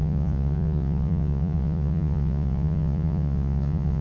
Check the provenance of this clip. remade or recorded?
remade